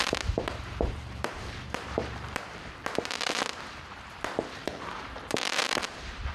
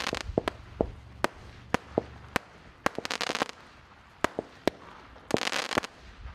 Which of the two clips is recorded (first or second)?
second